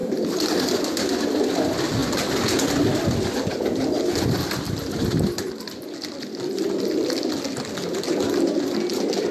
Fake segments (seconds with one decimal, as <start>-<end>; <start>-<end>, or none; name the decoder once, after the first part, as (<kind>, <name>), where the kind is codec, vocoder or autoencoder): none